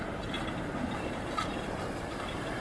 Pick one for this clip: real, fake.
fake